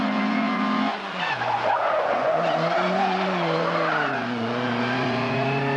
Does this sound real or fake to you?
fake